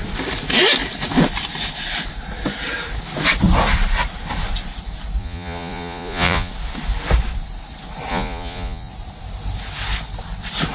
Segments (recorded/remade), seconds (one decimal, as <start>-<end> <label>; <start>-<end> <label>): 0.0-5.2 recorded; 5.2-6.5 remade; 6.5-8.1 recorded; 8.1-8.9 remade; 8.9-10.7 recorded